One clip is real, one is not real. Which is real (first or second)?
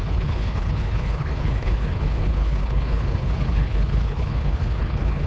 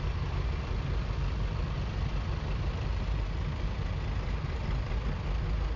second